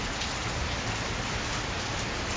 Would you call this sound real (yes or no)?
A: yes